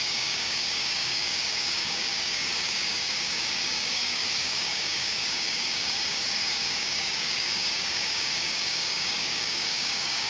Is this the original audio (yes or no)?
no